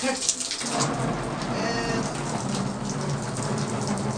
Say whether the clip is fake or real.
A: real